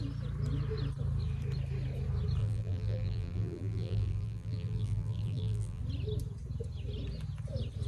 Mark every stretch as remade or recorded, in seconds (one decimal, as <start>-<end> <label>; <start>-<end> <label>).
0.0-2.4 recorded; 2.4-5.8 remade; 5.8-7.9 recorded